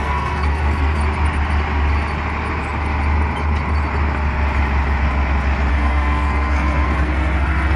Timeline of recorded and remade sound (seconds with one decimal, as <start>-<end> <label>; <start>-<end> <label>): 0.0-1.0 remade; 1.0-5.7 recorded; 5.7-7.8 remade